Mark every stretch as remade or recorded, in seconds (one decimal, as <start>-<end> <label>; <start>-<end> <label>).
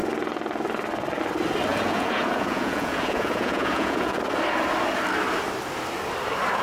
0.0-1.7 recorded; 1.7-4.2 remade; 4.2-6.6 recorded